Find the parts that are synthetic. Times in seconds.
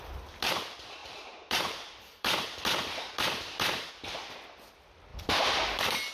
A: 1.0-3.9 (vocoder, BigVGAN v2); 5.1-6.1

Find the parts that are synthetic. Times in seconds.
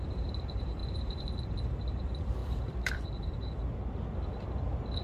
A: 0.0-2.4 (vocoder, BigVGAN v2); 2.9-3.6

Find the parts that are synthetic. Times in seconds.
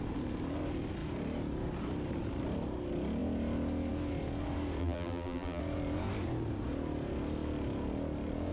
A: 4.8-5.6 (vocoder, BigVGAN v2)